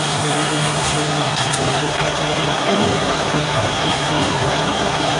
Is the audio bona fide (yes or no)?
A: no